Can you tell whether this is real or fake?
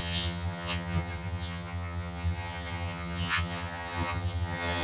fake